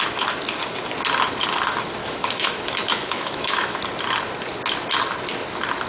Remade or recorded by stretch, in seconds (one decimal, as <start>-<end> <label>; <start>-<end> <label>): 0.0-2.0 recorded; 2.0-3.8 remade; 3.8-5.9 recorded